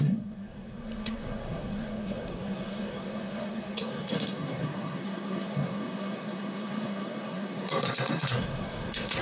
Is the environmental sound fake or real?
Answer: fake